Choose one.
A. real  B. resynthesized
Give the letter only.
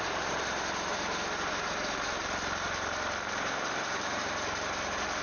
B